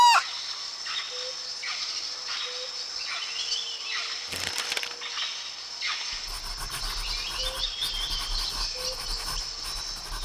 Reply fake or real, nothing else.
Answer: real